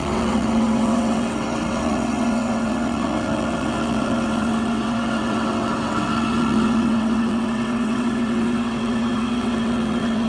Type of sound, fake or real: fake